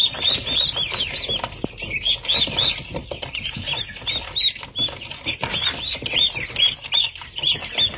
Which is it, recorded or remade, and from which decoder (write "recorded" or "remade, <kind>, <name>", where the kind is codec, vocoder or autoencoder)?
recorded